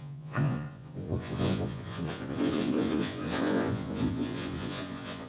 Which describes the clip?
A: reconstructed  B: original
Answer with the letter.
A